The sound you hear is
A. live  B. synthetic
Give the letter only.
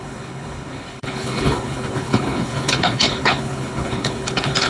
B